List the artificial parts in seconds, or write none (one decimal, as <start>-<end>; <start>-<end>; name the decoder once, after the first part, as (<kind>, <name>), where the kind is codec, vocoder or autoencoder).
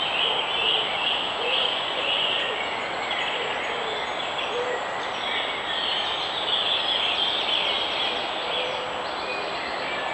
0.9-2.9 (vocoder, Vocos)